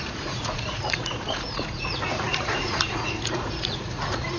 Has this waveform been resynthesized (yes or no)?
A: yes